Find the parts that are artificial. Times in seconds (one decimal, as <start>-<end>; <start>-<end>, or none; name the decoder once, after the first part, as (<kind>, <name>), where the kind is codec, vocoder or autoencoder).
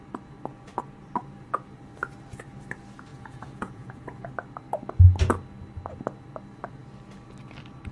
3.1-4.3 (vocoder, Vocos)